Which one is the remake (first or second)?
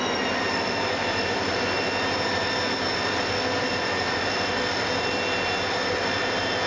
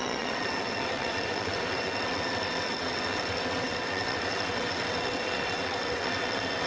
second